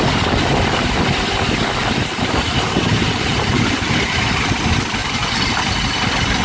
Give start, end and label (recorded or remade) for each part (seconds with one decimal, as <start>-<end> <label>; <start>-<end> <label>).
0.0-2.0 recorded; 2.0-4.5 remade; 4.5-5.0 recorded; 5.0-5.6 remade; 5.6-6.4 recorded